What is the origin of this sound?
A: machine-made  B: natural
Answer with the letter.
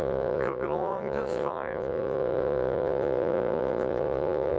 A